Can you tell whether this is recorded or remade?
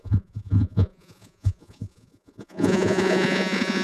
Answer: remade